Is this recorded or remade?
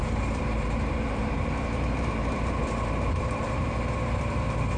remade